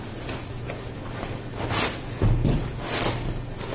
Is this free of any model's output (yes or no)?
yes